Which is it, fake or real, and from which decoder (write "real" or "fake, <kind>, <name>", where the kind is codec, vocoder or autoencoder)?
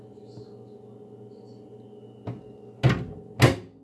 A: real